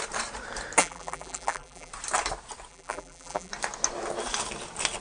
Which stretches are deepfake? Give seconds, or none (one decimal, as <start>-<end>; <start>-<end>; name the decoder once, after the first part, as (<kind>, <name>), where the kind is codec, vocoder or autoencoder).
0.8-1.9 (vocoder, BigVGAN v2); 2.7-3.5